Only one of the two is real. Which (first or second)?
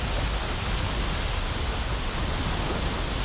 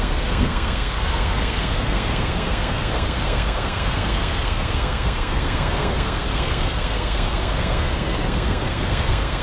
first